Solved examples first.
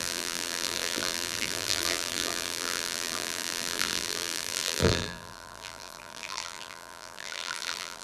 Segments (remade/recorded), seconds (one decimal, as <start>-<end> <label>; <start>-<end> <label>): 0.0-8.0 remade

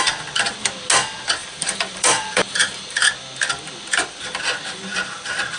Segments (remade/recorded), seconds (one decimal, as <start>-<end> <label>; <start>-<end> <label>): 0.0-1.4 recorded; 1.4-3.1 remade; 3.1-5.6 recorded

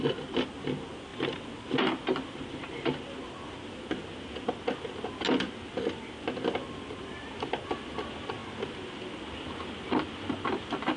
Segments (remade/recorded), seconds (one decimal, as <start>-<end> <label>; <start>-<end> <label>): 0.0-11.0 recorded

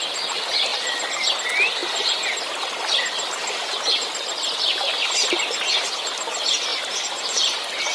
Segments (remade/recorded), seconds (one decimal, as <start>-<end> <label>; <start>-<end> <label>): 0.0-6.7 recorded; 6.7-7.2 remade; 7.2-7.9 recorded

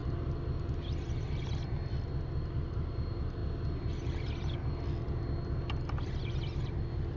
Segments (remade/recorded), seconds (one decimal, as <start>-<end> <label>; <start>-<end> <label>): 0.0-7.2 recorded

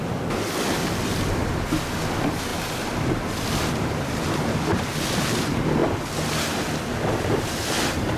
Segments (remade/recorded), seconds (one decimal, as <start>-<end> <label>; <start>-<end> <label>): 0.0-0.8 recorded; 0.8-1.6 remade; 1.6-2.5 recorded; 2.5-5.3 remade; 5.3-8.2 recorded

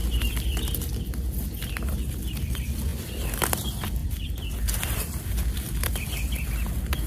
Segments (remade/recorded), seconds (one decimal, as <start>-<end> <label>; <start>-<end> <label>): 0.0-2.9 remade; 2.9-3.5 recorded; 3.5-7.1 remade

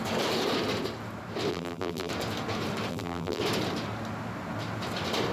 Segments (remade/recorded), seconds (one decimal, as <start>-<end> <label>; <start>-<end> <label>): 0.0-1.5 recorded; 1.5-2.1 remade; 2.1-2.9 recorded; 2.9-3.4 remade; 3.4-5.3 recorded